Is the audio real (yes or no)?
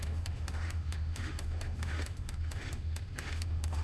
no